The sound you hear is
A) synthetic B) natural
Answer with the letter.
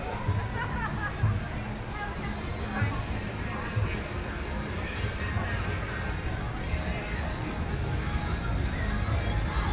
B